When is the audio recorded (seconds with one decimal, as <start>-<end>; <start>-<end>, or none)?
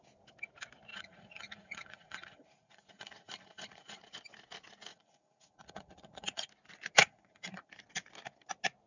0.0-0.9; 4.0-4.9; 6.5-7.0; 7.7-8.9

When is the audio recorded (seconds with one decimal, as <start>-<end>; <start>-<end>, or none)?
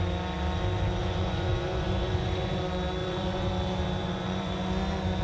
0.0-1.0; 2.6-3.0; 3.5-4.0; 4.7-5.2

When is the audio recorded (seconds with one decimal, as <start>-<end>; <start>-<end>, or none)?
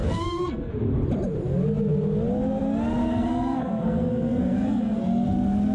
0.7-3.0; 5.0-5.7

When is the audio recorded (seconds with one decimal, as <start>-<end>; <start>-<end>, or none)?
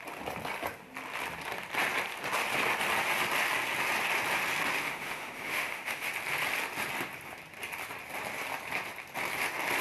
0.0-4.8; 6.1-9.8